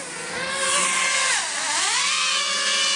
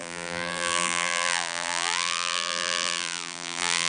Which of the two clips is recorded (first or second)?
first